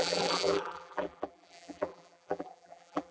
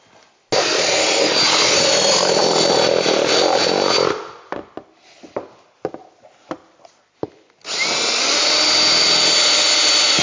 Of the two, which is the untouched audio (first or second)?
second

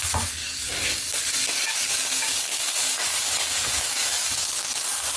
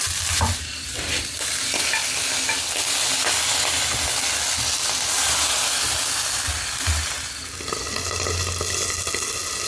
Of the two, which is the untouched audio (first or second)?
second